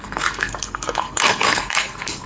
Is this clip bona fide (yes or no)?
no